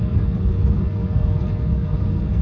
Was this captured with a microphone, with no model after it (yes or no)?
no